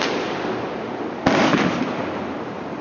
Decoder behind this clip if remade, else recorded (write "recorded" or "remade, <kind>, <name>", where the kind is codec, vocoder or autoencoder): recorded